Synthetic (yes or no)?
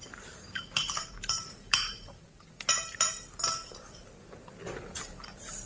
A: yes